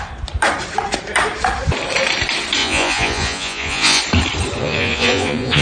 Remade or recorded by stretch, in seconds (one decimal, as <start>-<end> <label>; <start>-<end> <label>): 0.0-2.6 recorded; 2.6-4.0 remade; 4.0-4.6 recorded; 4.6-5.6 remade